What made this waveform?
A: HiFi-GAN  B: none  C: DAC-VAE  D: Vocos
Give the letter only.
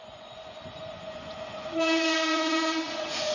D